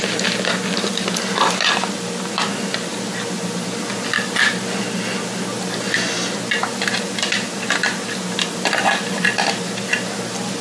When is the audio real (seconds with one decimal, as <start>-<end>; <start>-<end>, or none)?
0.0-10.6